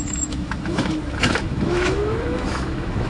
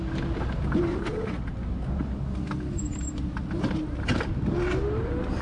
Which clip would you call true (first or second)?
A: second